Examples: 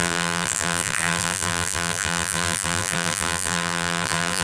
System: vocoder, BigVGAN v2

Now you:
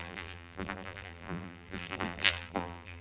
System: vocoder, BigVGAN v2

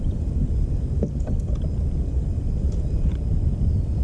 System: none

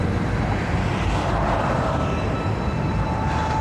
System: vocoder, BigVGAN v2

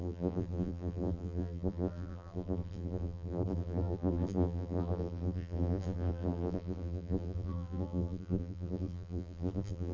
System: vocoder, BigVGAN v2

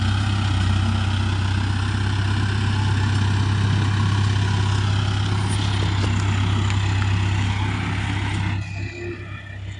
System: none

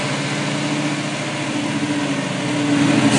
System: none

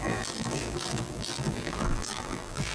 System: vocoder, BigVGAN v2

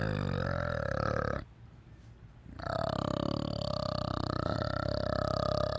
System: none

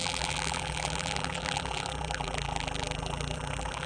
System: vocoder, BigVGAN v2